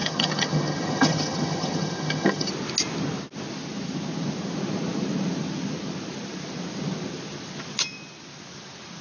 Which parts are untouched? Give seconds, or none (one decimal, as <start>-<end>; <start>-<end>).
2.5-9.0